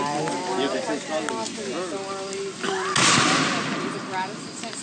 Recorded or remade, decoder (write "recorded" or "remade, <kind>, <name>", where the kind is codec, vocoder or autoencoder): recorded